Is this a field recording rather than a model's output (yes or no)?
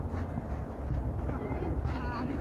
yes